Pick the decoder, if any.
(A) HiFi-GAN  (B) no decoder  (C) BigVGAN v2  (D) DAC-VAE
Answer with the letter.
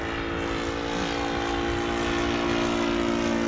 B